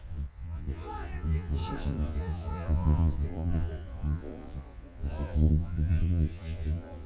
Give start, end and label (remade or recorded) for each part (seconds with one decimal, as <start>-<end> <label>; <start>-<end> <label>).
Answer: 0.0-7.1 remade